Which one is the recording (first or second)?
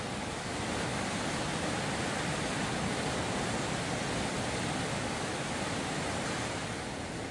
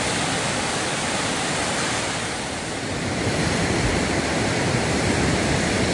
first